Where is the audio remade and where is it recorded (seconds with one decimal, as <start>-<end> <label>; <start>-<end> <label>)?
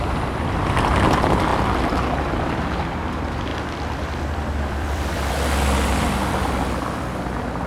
0.0-3.5 recorded; 3.5-5.3 remade; 5.3-7.7 recorded